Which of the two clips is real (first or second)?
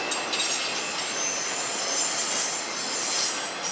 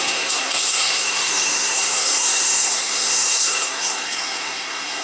first